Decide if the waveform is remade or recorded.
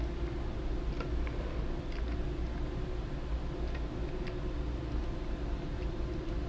recorded